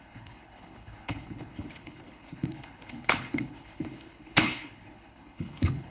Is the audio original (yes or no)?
no